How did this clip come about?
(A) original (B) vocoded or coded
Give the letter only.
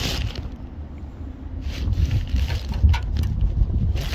A